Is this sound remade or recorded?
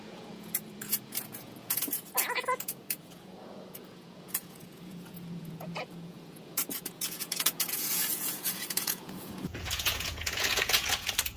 remade